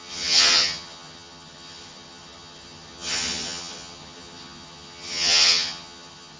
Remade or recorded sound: remade